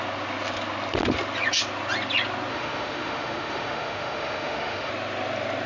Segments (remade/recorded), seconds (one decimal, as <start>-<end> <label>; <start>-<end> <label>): 0.0-2.5 recorded; 2.5-4.9 remade; 4.9-5.7 recorded